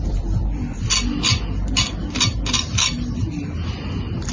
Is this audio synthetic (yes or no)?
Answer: no